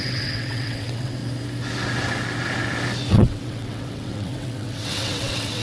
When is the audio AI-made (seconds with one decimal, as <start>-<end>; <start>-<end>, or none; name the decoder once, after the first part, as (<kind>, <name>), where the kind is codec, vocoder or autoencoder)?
0.0-1.2 (vocoder, WaveNeXt); 3.1-5.6